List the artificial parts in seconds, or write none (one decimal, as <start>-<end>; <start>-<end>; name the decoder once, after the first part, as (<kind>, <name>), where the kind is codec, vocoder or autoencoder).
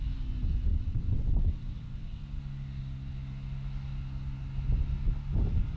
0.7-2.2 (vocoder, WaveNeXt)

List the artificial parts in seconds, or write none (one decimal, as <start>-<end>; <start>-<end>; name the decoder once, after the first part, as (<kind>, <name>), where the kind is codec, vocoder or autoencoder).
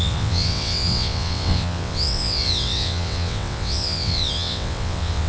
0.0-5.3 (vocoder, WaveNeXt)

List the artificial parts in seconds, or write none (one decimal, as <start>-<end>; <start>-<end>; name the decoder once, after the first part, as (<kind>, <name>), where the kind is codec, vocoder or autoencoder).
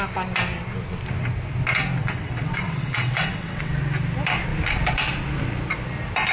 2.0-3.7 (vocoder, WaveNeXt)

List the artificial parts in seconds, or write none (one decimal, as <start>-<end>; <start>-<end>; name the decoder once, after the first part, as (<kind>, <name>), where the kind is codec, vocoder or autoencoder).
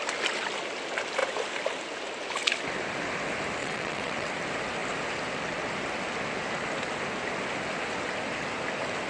3.6-4.3 (vocoder, WaveNeXt)